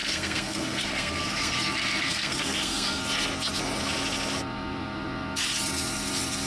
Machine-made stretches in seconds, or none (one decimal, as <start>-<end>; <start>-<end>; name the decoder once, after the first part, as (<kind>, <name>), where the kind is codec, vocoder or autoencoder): 0.0-3.0 (codec, SNAC)